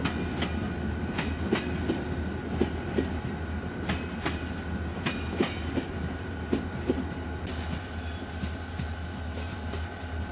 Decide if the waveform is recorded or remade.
recorded